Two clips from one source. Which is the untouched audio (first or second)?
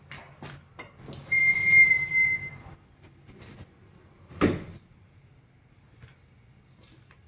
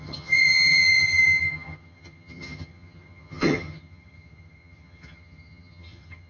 first